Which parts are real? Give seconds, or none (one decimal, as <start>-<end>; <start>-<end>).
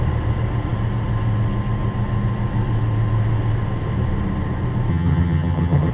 0.0-4.9